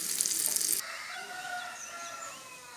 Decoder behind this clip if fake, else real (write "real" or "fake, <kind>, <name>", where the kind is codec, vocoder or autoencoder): real